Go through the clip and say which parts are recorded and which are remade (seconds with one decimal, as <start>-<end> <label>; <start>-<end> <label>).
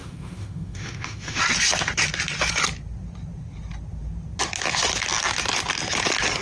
0.0-1.4 remade; 1.4-6.4 recorded